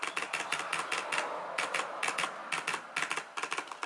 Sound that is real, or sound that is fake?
real